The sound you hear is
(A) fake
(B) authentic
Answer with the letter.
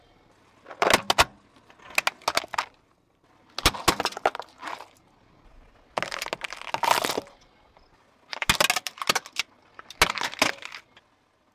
B